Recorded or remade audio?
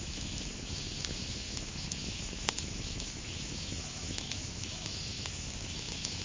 remade